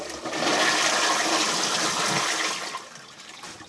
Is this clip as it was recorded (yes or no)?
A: yes